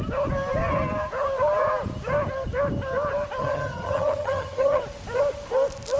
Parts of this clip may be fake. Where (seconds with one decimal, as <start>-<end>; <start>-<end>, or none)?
3.4-4.8